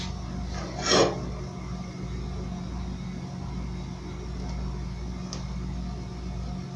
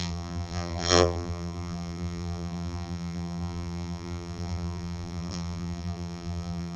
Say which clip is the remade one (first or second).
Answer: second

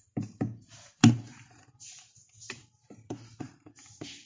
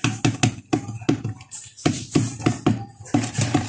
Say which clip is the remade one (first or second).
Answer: first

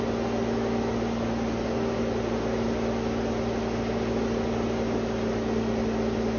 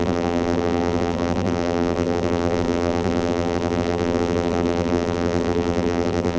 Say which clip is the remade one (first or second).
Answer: second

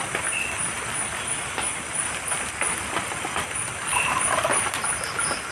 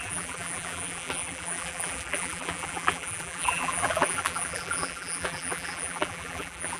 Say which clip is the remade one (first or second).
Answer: second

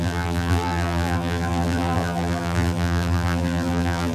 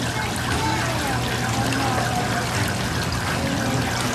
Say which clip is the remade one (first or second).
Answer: first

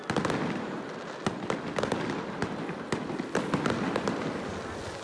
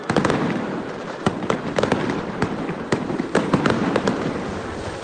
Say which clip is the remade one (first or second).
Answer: second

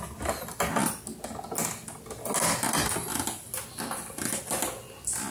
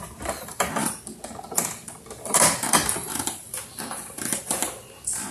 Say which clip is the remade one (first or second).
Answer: second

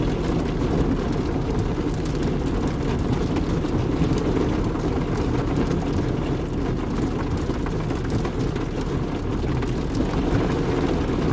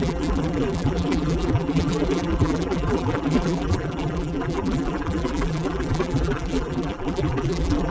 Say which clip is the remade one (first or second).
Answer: second